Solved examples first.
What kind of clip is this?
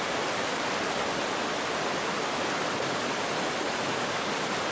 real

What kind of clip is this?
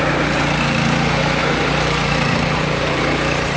fake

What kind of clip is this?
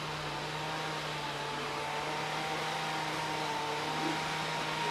real